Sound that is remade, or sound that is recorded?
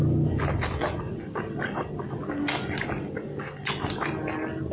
recorded